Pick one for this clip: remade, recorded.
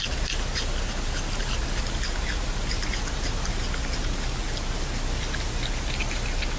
recorded